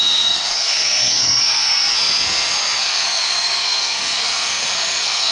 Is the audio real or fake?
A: fake